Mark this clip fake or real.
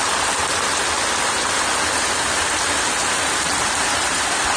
real